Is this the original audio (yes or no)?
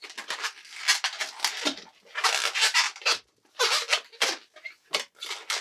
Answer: yes